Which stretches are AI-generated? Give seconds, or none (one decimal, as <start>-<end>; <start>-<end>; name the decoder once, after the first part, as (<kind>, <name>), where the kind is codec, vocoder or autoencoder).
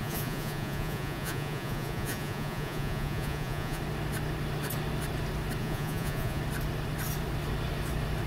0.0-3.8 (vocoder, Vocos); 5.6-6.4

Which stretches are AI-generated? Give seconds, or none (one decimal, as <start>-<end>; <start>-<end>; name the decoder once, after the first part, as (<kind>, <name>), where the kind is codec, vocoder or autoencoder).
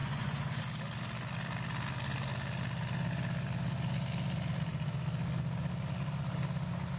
0.0-0.6 (vocoder, Vocos)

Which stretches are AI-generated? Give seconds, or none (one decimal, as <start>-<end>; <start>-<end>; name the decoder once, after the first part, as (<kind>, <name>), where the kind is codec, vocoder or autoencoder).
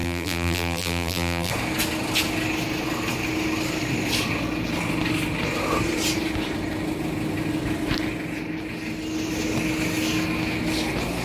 0.0-1.5 (vocoder, BigVGAN v2)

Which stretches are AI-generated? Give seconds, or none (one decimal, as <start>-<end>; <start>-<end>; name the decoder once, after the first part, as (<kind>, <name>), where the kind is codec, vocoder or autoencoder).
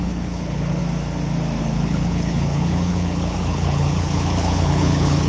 0.0-0.8 (codec, HILCodec); 1.6-5.3